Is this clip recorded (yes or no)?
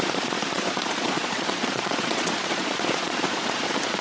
no